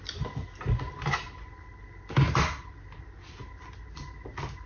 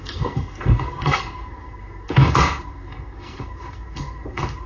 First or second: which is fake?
second